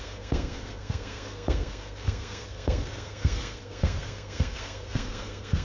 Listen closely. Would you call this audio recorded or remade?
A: remade